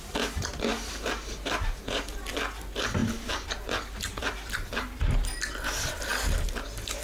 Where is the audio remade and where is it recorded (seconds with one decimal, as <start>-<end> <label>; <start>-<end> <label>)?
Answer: 0.0-7.0 recorded